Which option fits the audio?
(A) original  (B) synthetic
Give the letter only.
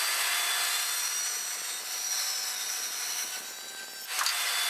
A